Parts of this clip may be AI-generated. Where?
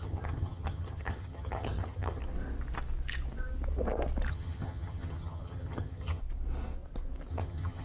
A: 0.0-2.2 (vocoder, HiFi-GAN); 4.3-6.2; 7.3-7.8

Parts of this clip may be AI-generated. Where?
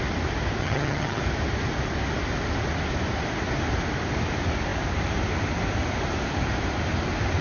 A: 0.6-1.2 (vocoder, HiFi-GAN)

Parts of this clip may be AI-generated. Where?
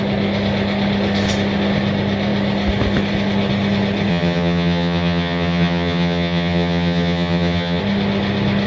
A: 4.1-7.8 (vocoder, HiFi-GAN)